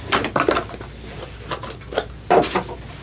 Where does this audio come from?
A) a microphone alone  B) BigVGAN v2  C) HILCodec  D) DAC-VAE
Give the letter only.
A